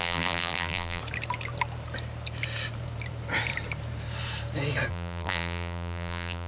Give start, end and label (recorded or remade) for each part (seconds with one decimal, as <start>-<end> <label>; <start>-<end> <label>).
0.0-1.0 remade; 1.0-4.9 recorded; 4.9-6.5 remade